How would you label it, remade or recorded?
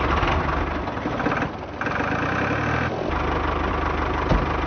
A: recorded